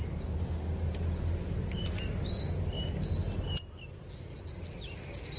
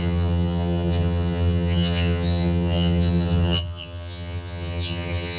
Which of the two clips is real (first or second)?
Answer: first